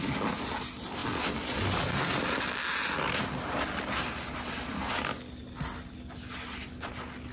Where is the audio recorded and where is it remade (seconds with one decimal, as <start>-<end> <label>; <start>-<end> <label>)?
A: 0.0-7.3 recorded